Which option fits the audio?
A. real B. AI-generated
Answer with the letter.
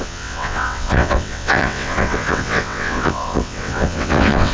B